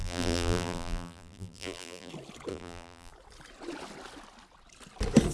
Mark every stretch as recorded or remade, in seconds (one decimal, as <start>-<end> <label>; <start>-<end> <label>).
0.0-2.1 remade; 2.1-2.5 recorded; 2.5-3.1 remade; 3.1-5.3 recorded